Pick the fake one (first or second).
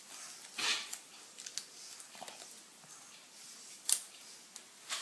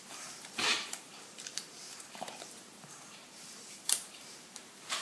second